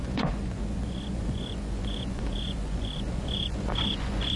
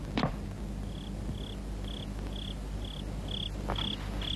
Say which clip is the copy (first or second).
first